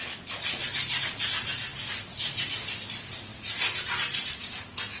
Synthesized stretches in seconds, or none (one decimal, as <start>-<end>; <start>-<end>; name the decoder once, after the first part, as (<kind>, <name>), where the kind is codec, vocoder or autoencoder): 1.7-2.9 (vocoder, BigVGAN v2)